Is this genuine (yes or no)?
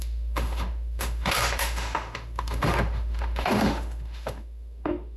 no